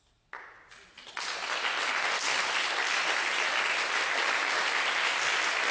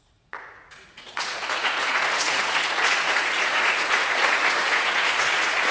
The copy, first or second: second